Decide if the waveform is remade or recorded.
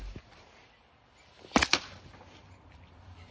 recorded